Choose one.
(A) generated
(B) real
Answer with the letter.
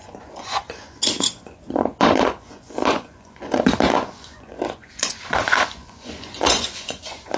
A